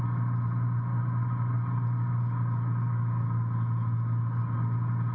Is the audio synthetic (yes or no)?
no